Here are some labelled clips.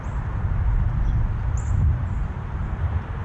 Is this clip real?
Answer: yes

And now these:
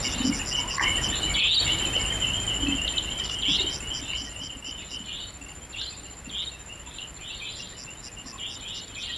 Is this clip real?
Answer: yes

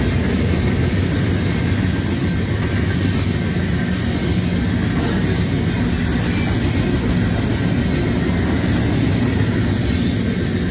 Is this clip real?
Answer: yes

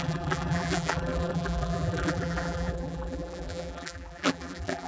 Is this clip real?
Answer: no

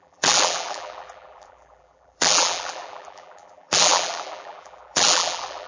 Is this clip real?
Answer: no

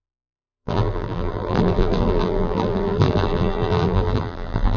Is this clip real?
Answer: no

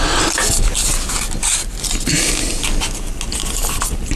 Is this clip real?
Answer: yes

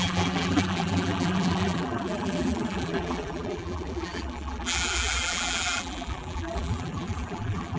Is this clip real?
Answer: no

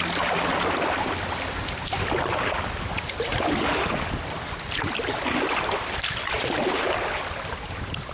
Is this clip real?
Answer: yes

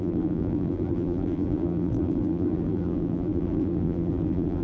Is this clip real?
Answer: no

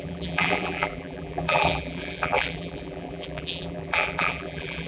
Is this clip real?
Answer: no